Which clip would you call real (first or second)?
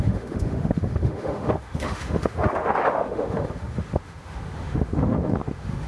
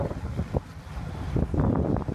second